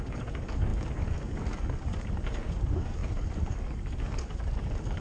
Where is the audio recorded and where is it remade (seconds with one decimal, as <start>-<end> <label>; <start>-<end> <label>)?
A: 0.0-5.0 remade